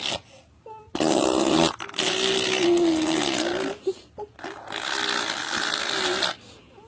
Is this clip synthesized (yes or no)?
no